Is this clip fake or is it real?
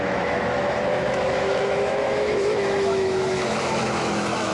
fake